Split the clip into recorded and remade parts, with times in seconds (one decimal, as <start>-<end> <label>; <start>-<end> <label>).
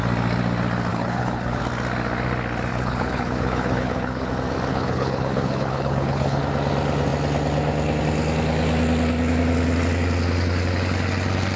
0.0-0.9 recorded; 0.9-1.6 remade; 1.6-2.7 recorded; 2.7-4.3 remade; 4.3-4.7 recorded; 4.7-6.4 remade; 6.4-11.6 recorded